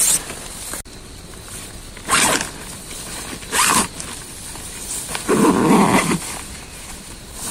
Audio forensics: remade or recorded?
recorded